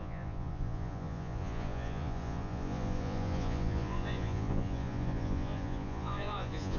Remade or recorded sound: remade